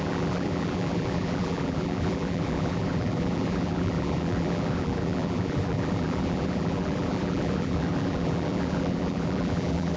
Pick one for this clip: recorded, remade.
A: remade